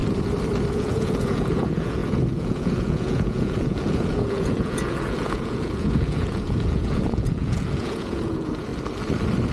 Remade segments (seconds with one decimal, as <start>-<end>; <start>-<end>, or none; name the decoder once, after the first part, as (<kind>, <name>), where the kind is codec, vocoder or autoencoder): 0.7-8.7 (vocoder, Vocos)